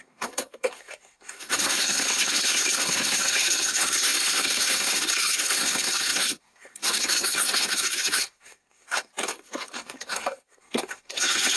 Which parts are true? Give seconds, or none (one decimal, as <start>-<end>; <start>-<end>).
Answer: none

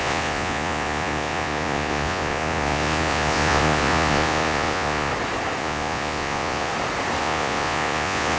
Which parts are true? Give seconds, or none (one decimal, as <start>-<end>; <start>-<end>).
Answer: 5.1-5.6; 6.7-7.2

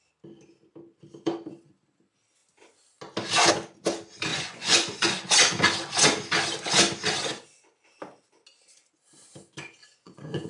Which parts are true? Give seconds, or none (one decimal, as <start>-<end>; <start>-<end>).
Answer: 0.0-4.3; 5.3-9.8

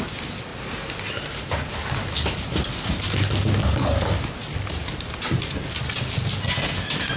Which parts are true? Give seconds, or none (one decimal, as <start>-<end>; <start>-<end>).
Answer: 0.0-7.2

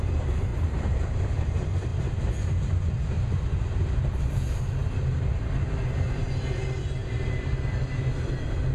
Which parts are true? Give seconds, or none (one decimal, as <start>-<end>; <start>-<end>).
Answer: 0.0-0.5; 1.4-7.0; 7.6-8.7

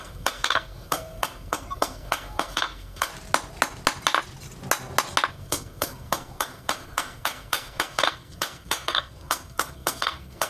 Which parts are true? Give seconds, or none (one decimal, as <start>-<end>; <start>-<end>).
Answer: 3.1-5.3

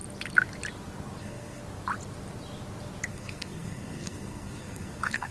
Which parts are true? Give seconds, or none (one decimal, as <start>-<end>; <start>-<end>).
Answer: 0.0-1.2; 1.6-3.1